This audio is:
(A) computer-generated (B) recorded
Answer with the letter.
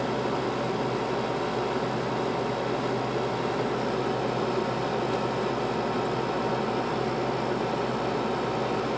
B